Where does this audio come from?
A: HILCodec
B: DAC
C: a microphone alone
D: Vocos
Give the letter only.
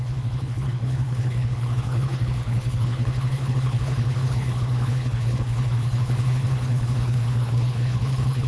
A